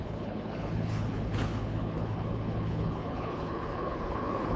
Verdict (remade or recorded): remade